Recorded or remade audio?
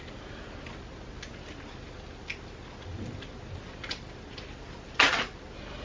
recorded